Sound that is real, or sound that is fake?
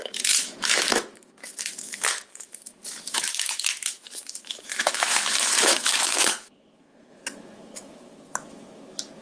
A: fake